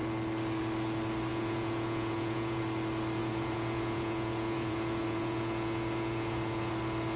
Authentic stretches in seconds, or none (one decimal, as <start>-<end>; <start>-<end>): 0.0-1.3; 2.6-3.2; 6.7-7.2